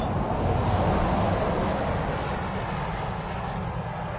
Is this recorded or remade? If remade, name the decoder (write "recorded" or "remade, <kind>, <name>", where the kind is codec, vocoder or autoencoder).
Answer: recorded